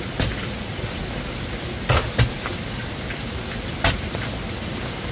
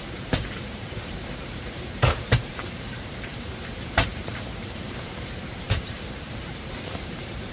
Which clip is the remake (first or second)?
second